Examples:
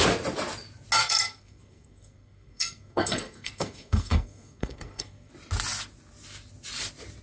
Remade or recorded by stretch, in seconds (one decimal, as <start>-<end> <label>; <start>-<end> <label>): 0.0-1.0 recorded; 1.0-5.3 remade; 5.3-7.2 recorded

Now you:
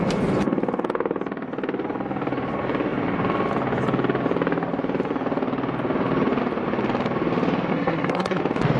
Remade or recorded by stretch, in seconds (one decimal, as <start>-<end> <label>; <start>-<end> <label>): 0.0-7.7 recorded; 7.7-8.4 remade; 8.4-8.8 recorded

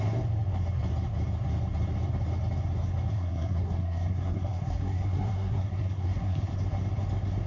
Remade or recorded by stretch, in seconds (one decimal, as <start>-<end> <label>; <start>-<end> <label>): 0.0-3.1 recorded; 3.1-6.5 remade; 6.5-7.5 recorded

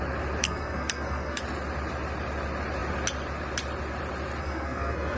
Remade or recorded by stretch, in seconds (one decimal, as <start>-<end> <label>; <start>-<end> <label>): 0.0-0.4 recorded; 0.4-1.4 remade; 1.4-4.4 recorded; 4.4-5.2 remade

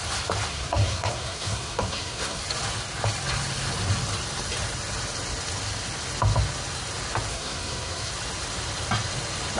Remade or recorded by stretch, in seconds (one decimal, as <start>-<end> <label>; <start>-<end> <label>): 0.0-0.5 recorded; 0.5-2.4 remade; 2.4-7.3 recorded; 7.3-8.1 remade; 8.1-9.6 recorded

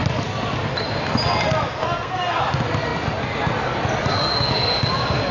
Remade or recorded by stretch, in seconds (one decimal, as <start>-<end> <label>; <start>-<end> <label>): 0.0-1.8 recorded; 1.8-2.4 remade; 2.4-5.3 recorded

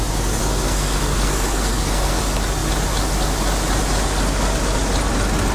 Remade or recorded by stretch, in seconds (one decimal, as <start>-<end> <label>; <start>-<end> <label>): 0.0-0.4 recorded; 0.4-2.2 remade; 2.2-5.5 recorded

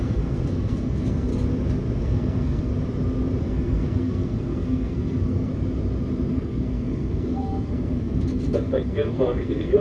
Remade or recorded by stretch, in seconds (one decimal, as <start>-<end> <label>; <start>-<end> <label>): 0.0-1.3 remade; 1.3-2.0 recorded; 2.0-2.7 remade; 2.7-3.4 recorded; 3.4-5.5 remade; 5.5-6.3 recorded; 6.3-9.8 remade